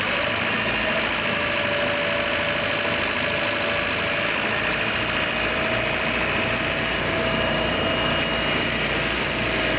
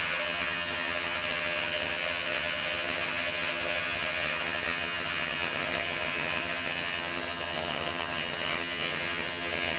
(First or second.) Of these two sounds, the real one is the first